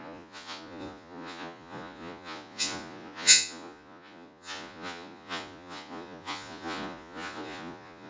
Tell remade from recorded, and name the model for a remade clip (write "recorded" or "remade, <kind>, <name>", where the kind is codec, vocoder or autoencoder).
remade, vocoder, Vocos